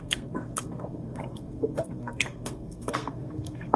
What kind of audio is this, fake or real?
fake